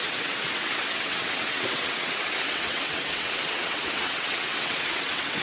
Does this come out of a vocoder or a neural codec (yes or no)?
yes